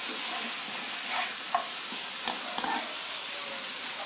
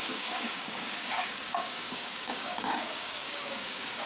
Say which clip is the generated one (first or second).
second